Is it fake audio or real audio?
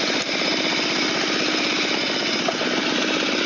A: real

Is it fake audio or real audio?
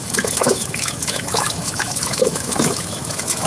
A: fake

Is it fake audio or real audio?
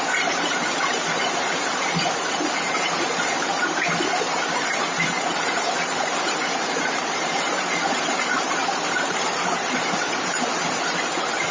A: fake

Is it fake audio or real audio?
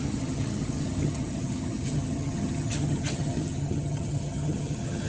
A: fake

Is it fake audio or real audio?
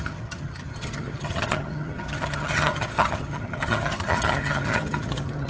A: fake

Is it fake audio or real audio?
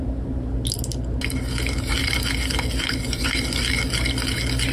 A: real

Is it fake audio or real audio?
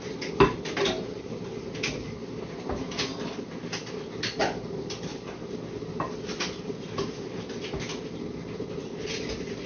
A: real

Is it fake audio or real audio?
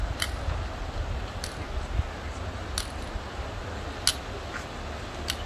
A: real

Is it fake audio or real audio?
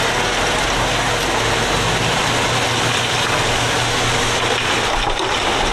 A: real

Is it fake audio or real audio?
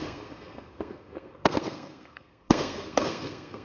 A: fake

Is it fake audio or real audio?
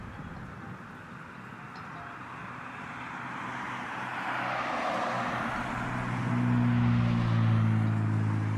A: real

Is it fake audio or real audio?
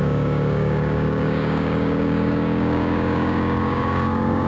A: fake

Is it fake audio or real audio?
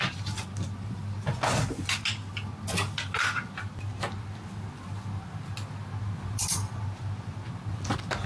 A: real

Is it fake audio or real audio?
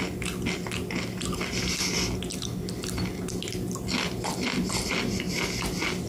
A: real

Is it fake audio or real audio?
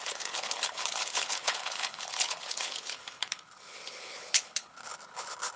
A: fake